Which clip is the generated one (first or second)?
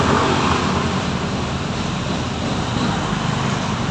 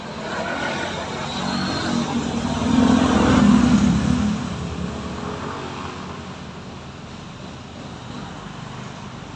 first